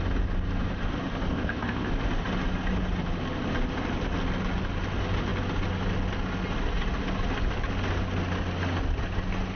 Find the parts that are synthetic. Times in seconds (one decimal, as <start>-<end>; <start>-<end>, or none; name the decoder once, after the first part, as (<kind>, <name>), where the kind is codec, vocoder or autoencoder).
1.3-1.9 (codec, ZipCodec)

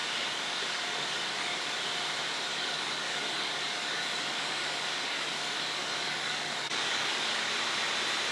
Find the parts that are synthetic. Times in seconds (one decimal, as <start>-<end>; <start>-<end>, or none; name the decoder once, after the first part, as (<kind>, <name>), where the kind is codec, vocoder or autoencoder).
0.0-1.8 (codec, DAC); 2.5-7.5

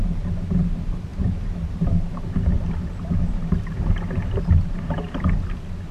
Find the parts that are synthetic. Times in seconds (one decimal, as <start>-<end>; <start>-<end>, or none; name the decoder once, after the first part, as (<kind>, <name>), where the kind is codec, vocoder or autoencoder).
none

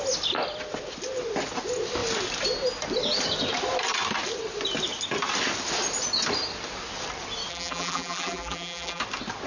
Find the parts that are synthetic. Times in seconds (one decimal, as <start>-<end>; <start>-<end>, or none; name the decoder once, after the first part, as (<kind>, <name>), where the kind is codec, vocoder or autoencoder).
7.5-9.0 (vocoder, BigVGAN v2)

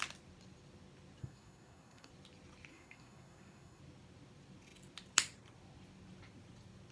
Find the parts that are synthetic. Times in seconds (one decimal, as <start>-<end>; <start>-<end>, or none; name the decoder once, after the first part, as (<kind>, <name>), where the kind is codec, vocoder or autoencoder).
1.2-2.1 (codec, SNAC); 2.7-3.8

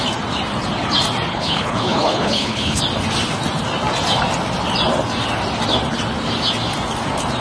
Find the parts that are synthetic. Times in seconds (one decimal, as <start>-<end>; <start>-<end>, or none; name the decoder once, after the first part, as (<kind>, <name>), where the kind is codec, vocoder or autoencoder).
1.3-2.8 (codec, HILCodec)